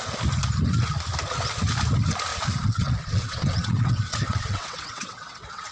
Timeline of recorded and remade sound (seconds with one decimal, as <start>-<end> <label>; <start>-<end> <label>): 0.0-2.3 recorded; 2.3-5.7 remade